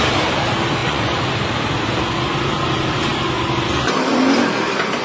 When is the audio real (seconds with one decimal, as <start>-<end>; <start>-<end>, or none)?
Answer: 0.0-0.8; 1.3-5.0